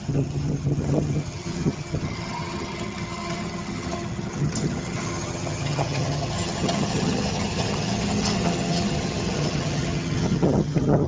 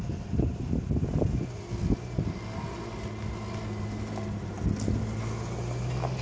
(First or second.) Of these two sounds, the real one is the second